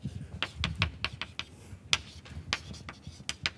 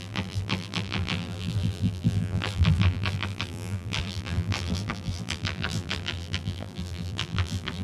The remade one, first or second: second